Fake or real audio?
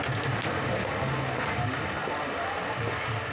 real